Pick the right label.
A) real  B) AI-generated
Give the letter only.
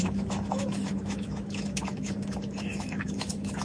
B